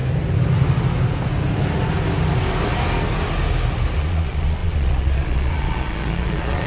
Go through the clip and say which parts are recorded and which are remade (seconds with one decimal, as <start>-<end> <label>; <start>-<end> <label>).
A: 0.0-4.0 recorded; 4.0-6.7 remade